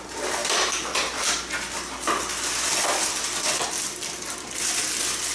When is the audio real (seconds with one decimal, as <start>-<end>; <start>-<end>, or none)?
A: 0.0-0.4; 1.4-5.3